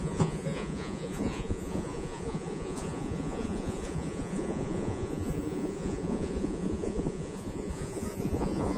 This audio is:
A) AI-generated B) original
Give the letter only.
A